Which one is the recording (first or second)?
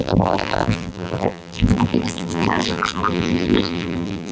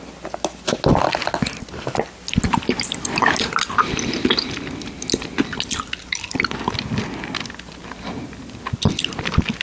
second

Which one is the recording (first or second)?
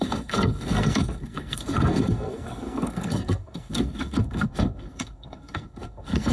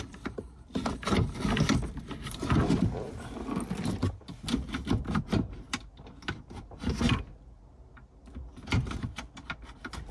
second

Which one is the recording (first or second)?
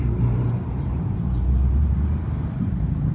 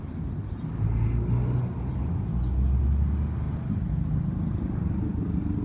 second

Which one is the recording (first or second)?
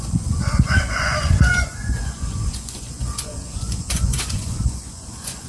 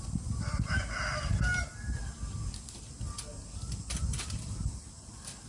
second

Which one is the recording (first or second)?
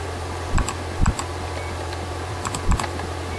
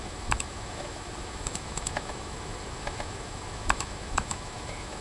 first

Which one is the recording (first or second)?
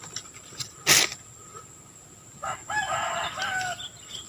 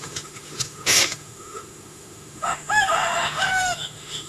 first